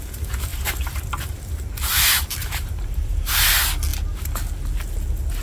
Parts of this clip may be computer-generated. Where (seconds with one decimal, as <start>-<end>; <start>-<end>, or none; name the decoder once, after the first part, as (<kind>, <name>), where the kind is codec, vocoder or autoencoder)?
0.5-1.0 (vocoder, BigVGAN v2); 2.4-3.3